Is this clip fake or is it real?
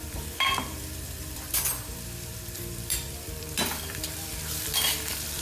fake